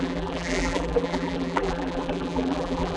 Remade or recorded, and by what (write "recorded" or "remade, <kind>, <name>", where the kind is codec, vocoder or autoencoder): remade, vocoder, BigVGAN v2